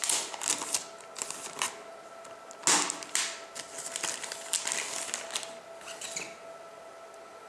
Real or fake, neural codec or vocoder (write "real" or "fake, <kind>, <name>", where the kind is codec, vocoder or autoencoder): real